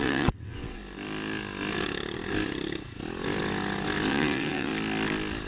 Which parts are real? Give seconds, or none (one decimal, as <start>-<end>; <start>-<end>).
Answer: 0.8-4.1; 4.7-5.5